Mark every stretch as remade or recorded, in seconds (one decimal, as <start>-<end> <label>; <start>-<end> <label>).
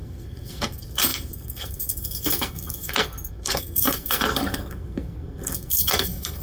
0.0-6.4 remade